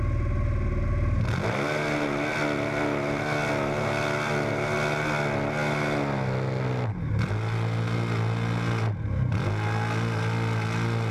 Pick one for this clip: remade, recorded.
recorded